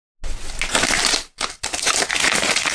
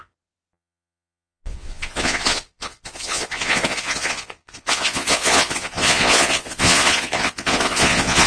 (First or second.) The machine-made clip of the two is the second